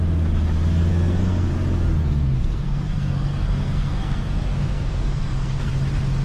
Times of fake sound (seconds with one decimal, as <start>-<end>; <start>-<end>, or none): 0.9-1.5; 2.0-5.7